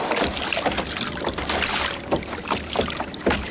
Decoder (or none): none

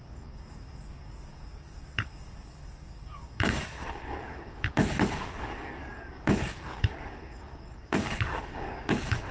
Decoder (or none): codec, DAC